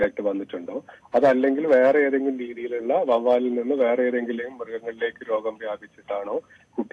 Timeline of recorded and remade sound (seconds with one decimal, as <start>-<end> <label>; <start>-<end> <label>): 0.0-6.9 recorded